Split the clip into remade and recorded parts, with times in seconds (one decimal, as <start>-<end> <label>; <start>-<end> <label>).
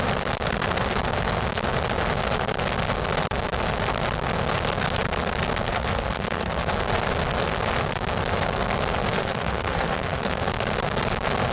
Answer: 0.0-5.7 recorded; 5.7-6.7 remade; 6.7-9.2 recorded; 9.2-10.4 remade; 10.4-11.5 recorded